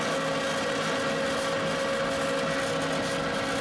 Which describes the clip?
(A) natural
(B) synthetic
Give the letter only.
A